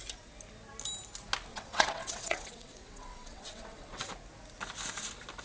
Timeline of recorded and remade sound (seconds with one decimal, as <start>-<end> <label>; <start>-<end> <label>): 0.0-1.5 recorded; 1.5-4.1 remade; 4.1-5.4 recorded